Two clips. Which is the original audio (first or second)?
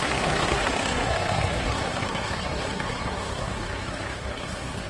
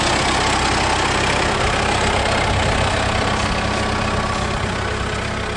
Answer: second